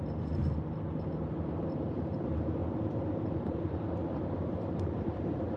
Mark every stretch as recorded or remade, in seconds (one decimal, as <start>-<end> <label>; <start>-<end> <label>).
0.0-0.4 remade; 0.4-0.9 recorded; 0.9-5.6 remade